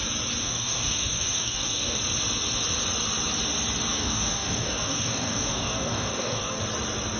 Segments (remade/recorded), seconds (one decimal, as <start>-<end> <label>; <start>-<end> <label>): 0.0-0.4 recorded; 0.4-2.0 remade; 2.0-3.9 recorded; 3.9-6.6 remade; 6.6-7.2 recorded

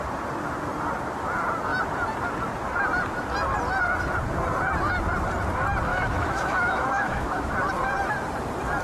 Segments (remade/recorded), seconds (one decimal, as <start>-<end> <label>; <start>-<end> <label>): 0.0-5.9 recorded; 5.9-7.5 remade; 7.5-8.8 recorded